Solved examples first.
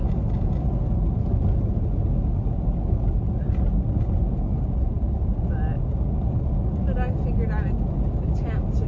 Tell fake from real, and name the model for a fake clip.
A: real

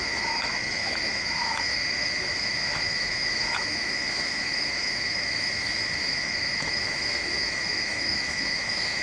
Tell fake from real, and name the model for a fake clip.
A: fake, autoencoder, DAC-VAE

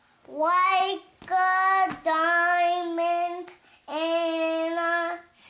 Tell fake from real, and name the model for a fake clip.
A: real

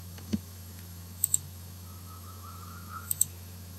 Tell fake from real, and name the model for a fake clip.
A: fake, autoencoder, DAC-VAE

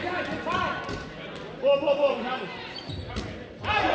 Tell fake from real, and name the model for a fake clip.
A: real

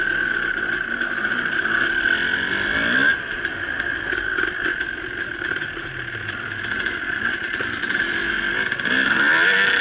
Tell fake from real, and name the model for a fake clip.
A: real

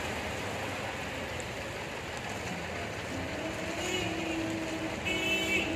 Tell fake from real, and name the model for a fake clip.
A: real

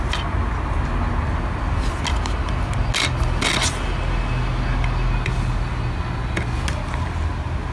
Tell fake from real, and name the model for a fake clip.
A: real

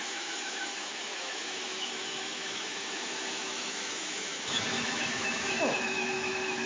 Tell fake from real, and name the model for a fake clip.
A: fake, autoencoder, DAC-VAE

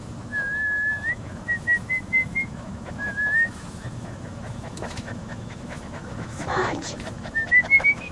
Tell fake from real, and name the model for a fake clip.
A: fake, autoencoder, DAC-VAE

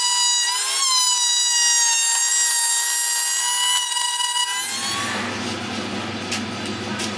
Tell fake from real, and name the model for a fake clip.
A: real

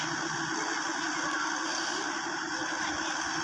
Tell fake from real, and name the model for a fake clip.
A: real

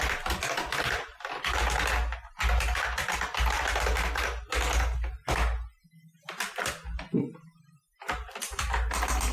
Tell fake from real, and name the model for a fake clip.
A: real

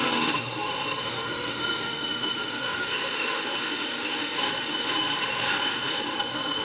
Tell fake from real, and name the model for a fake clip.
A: fake, autoencoder, DAC-VAE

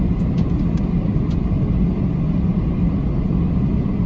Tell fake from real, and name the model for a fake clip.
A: real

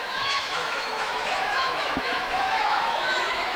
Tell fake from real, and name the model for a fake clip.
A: fake, autoencoder, DAC-VAE